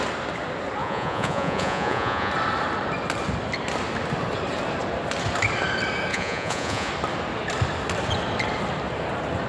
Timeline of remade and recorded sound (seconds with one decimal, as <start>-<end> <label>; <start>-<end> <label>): 0.0-0.8 recorded; 0.8-2.3 remade; 2.3-6.1 recorded; 6.1-6.9 remade; 6.9-9.5 recorded